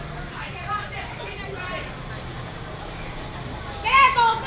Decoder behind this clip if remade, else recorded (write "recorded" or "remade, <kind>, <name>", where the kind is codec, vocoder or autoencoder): recorded